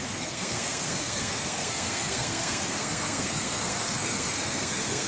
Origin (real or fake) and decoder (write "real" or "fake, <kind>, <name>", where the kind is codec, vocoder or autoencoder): fake, codec, SNAC